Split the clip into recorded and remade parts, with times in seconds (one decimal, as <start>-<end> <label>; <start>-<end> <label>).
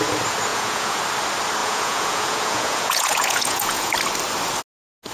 0.0-0.5 recorded; 0.5-1.0 remade; 1.0-1.6 recorded; 1.6-3.9 remade; 3.9-5.1 recorded